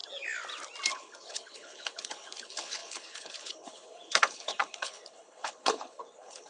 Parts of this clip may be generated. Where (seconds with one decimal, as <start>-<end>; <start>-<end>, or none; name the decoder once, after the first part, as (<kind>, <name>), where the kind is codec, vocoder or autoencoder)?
0.9-6.5 (codec, HILCodec)

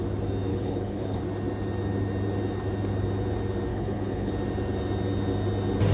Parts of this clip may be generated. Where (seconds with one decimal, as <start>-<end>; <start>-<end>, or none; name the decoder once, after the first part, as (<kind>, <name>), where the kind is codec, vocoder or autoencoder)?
0.5-1.2 (codec, HILCodec); 3.7-4.3

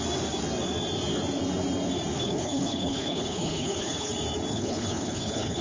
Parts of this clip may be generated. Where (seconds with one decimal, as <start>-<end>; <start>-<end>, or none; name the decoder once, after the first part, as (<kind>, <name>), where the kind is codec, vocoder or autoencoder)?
2.2-4.1 (codec, HILCodec); 4.5-5.6

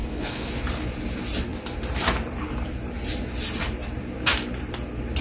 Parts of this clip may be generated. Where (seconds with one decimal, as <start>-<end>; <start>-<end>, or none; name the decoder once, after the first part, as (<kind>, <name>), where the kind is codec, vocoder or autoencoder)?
0.0-0.5 (codec, HILCodec)

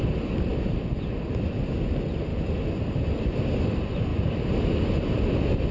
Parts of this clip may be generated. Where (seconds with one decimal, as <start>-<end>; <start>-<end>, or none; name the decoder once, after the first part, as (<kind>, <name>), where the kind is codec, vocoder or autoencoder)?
none

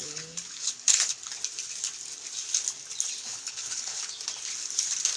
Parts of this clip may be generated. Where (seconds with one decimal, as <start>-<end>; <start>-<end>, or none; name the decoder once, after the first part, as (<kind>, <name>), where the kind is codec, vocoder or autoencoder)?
0.0-1.2 (codec, HILCodec); 3.2-4.1